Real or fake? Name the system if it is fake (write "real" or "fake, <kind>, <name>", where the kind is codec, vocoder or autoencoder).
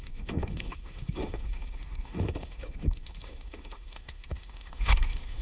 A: fake, autoencoder, DAC-VAE